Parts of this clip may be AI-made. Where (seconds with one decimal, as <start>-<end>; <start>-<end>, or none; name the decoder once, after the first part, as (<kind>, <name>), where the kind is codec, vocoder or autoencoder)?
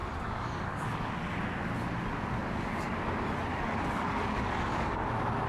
0.0-1.1 (codec, DAC); 2.4-3.0; 3.5-5.1